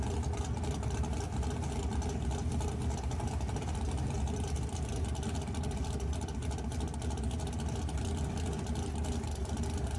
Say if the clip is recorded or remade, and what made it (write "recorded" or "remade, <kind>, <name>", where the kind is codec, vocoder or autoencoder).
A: recorded